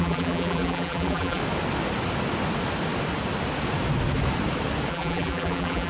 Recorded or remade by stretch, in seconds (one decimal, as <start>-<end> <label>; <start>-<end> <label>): 0.0-1.4 remade; 1.4-4.9 recorded; 4.9-5.9 remade